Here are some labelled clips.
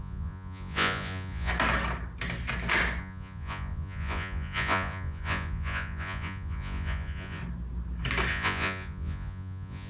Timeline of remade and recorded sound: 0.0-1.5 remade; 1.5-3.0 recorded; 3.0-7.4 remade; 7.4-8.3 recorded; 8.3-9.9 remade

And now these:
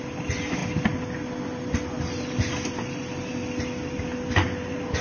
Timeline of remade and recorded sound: 0.0-5.0 recorded

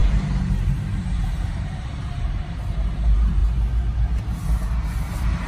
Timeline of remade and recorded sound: 0.0-3.4 remade; 3.4-5.0 recorded; 5.0-5.5 remade

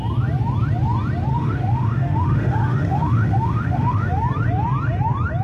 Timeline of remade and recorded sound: 0.0-1.3 recorded; 1.3-4.1 remade; 4.1-5.4 recorded